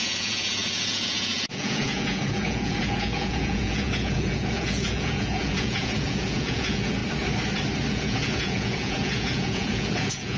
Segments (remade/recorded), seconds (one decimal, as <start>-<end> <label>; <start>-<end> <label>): 0.0-7.0 remade; 7.0-7.9 recorded; 7.9-10.4 remade